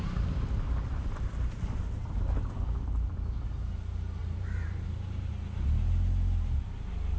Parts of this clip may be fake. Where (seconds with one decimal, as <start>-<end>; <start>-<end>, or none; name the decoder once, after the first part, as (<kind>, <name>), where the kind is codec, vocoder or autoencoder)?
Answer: 0.9-1.6 (vocoder, BigVGAN v2); 4.2-5.3